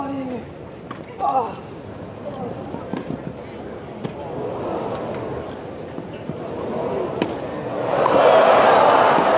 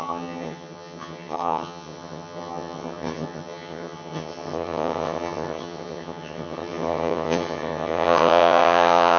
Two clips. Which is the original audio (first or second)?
first